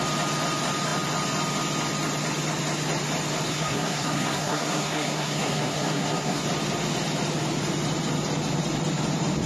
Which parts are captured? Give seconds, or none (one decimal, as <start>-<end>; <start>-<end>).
0.0-3.5; 6.4-9.5